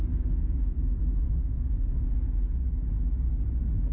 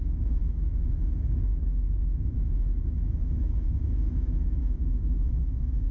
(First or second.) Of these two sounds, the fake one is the second